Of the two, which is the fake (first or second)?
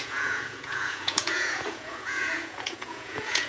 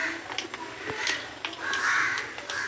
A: first